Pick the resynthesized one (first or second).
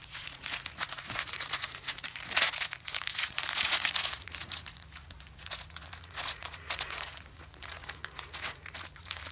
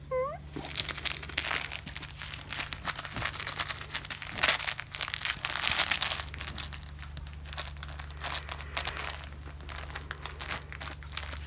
first